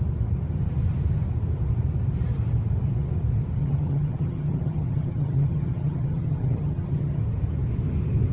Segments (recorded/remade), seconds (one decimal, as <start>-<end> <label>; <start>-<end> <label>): 0.0-3.6 recorded; 3.6-7.2 remade; 7.2-8.3 recorded